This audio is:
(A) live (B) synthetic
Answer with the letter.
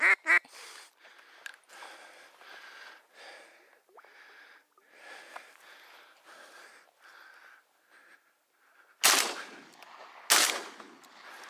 A